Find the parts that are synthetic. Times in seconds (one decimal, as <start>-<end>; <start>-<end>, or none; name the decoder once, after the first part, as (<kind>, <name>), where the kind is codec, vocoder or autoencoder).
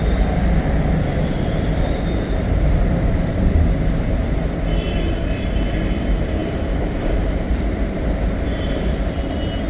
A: 0.0-9.7 (vocoder, BigVGAN v2)